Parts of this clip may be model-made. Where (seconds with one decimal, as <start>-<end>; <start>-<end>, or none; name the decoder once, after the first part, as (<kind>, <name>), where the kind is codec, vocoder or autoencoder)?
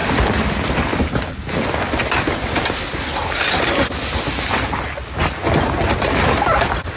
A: none